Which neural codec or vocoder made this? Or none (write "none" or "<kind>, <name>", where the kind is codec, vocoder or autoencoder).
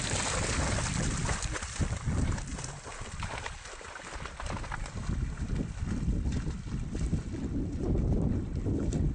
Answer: none